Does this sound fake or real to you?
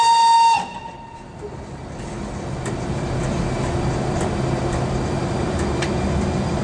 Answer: real